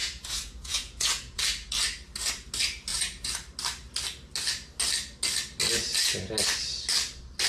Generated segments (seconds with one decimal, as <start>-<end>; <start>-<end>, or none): 0.0-1.4